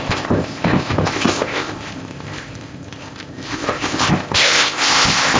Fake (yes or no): yes